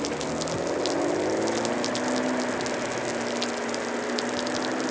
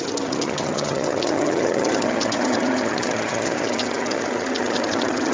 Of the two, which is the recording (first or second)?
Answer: first